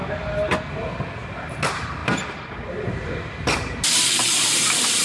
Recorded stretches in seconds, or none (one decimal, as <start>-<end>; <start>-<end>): 0.0-1.3

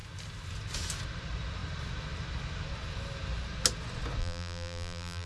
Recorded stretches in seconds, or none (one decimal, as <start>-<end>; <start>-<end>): 0.0-4.2